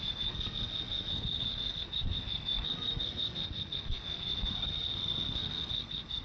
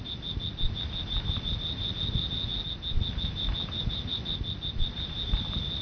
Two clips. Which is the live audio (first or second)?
second